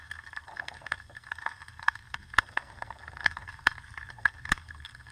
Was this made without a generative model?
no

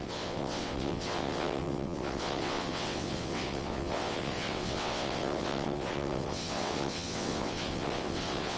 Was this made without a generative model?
no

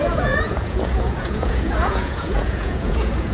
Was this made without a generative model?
no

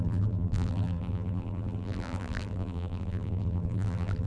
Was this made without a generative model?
no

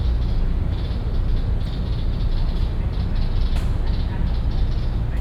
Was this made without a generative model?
yes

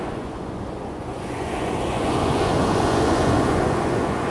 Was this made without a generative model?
no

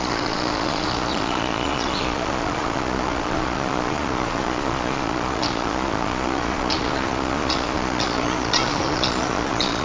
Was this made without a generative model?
no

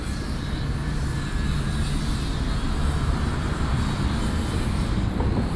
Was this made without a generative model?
no